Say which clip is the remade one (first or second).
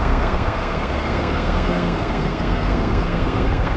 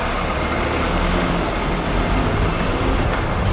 first